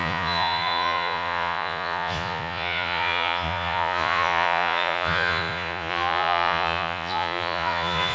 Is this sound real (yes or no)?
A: no